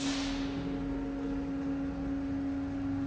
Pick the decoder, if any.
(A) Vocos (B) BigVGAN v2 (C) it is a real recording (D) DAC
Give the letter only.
C